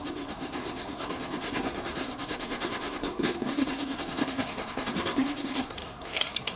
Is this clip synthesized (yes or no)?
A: yes